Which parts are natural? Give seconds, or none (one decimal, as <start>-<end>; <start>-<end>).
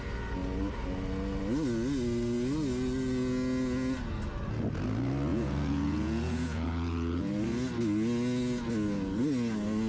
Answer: 0.0-5.3; 7.3-9.9